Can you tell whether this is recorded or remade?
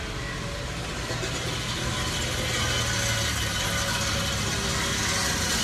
recorded